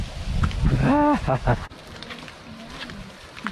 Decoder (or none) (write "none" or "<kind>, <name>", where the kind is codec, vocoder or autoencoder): none